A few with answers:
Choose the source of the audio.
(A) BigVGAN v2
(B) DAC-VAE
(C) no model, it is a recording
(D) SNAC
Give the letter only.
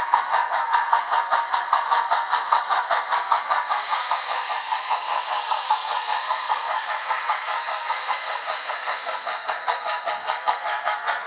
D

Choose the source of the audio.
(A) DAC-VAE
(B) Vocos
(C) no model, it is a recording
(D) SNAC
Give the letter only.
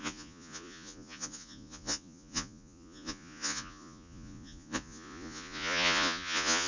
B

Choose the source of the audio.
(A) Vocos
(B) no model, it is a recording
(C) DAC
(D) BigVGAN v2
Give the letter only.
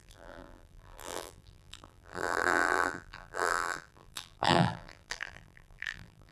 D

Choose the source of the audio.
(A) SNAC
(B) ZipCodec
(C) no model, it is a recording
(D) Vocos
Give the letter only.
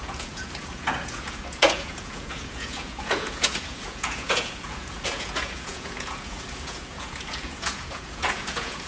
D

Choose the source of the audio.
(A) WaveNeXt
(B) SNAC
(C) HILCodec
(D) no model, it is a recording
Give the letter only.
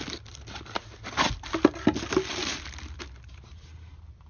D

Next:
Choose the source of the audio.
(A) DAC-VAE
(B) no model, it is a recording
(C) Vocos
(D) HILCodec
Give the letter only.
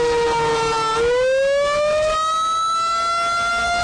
B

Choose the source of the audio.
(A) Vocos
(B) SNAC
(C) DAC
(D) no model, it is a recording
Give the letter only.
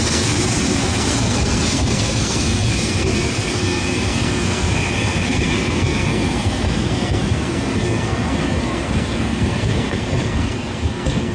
B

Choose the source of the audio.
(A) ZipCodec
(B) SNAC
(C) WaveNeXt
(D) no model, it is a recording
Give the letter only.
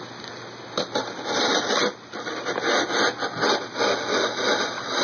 D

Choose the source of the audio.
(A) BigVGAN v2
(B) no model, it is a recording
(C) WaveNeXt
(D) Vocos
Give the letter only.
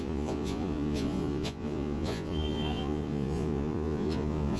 D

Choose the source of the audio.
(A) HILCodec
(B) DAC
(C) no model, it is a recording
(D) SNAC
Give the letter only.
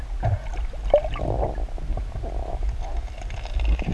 C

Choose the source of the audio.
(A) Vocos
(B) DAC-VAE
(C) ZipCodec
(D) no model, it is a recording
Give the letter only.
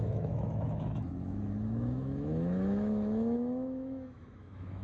B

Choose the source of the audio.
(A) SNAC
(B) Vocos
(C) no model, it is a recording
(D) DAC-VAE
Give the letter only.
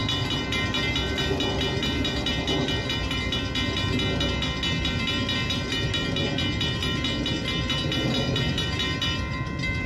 C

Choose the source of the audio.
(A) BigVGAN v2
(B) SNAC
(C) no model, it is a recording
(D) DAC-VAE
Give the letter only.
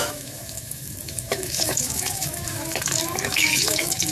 D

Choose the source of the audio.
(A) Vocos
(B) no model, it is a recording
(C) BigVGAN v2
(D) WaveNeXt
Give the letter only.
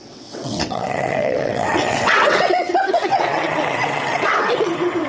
D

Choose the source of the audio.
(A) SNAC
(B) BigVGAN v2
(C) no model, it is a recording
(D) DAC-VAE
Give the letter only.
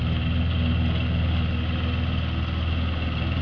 C